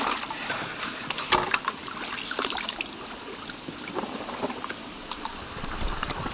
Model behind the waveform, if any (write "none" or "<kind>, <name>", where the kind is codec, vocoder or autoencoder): none